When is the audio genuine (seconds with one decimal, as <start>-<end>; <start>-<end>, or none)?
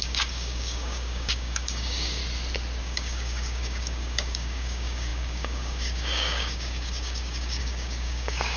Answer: 2.2-2.8